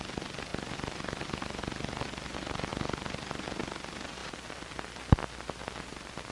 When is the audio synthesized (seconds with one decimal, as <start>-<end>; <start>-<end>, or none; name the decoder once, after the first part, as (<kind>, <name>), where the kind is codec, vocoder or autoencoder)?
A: 0.5-1.6 (vocoder, BigVGAN v2); 4.2-4.7